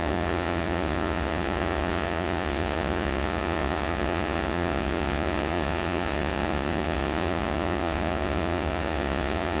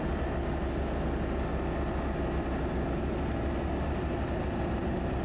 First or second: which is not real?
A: first